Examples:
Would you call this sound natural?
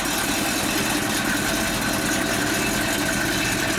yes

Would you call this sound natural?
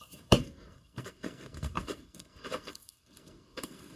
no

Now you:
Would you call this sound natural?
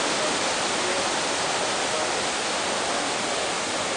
yes